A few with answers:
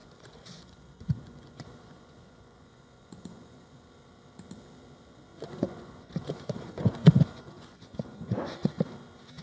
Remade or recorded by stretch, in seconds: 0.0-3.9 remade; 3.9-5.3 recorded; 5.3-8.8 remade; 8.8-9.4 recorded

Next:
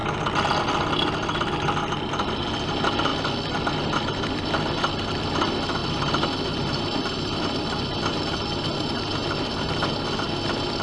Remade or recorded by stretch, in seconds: 0.0-10.8 recorded